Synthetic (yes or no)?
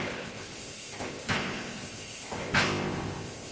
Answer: yes